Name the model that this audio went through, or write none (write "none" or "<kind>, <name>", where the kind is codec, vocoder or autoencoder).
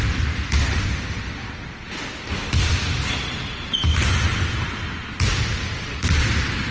none